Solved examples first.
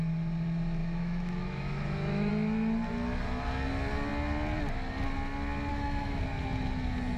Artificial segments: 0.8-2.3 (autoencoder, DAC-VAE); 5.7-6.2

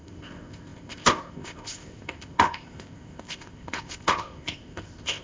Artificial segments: 0.0-5.2 (codec, ZipCodec)

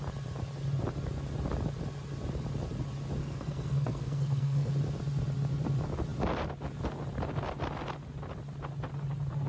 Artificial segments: 3.2-4.7 (codec, SNAC)

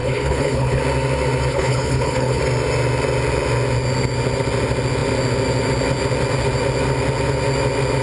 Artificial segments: 0.0-0.8 (codec, HILCodec); 1.5-2.4

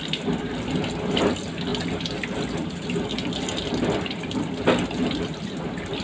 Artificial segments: none